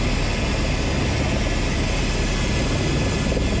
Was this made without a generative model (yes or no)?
yes